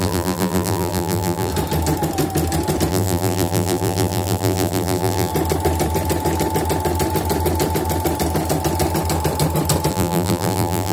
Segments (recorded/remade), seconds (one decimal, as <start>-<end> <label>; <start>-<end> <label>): 0.0-1.5 remade; 1.5-2.9 recorded; 2.9-5.3 remade; 5.3-9.9 recorded; 9.9-10.9 remade

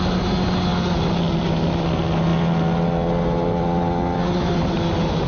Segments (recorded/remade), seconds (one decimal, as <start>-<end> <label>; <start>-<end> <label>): 0.0-5.3 recorded